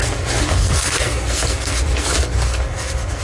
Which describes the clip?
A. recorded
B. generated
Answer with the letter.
B